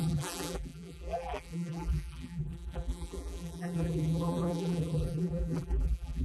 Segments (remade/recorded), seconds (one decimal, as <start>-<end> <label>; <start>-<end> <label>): 0.0-6.2 remade